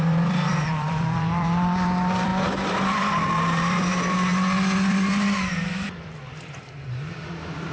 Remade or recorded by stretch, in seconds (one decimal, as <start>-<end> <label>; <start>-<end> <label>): 0.0-2.3 remade; 2.3-2.9 recorded; 2.9-4.3 remade; 4.3-4.9 recorded; 4.9-7.7 remade